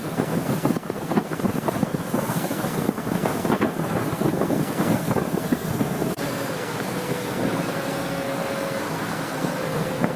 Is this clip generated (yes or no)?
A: yes